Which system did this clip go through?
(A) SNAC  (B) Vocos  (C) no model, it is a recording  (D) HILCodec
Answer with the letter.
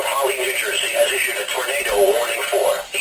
C